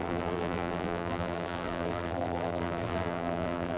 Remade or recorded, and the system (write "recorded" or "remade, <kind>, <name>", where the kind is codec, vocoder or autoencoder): remade, vocoder, BigVGAN v2